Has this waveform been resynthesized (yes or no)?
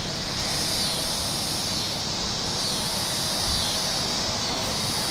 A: no